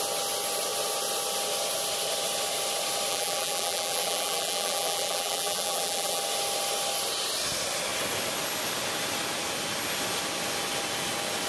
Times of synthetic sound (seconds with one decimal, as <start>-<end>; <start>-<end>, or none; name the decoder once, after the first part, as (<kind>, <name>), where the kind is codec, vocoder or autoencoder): 3.1-6.2 (vocoder, BigVGAN v2)

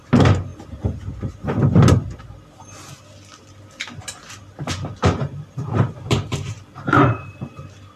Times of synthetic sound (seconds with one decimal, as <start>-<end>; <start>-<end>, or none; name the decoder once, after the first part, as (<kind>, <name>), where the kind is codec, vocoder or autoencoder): 5.0-7.6 (vocoder, BigVGAN v2)

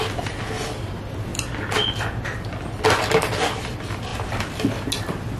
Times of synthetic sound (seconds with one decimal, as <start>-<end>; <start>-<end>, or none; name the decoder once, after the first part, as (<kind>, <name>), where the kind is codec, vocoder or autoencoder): 0.0-1.3 (vocoder, BigVGAN v2); 2.7-4.1

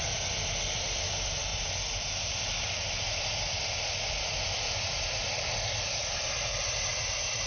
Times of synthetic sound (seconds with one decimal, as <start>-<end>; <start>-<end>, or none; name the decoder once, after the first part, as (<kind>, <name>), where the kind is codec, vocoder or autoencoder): 0.0-7.5 (vocoder, BigVGAN v2)

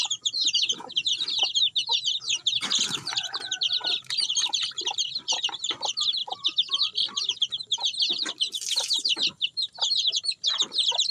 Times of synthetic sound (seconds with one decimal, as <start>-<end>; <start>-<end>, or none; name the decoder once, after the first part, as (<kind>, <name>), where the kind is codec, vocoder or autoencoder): 0.0-1.8 (vocoder, BigVGAN v2); 2.4-9.0; 10.3-11.1